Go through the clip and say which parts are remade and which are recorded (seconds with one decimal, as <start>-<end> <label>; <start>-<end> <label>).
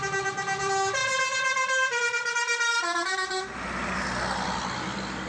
0.0-5.3 recorded